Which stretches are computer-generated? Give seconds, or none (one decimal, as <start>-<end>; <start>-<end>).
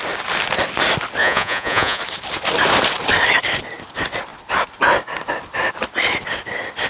1.2-2.0